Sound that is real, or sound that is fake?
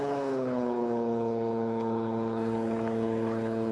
fake